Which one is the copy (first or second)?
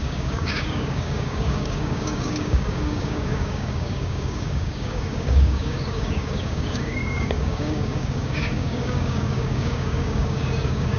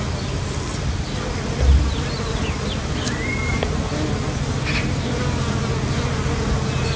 first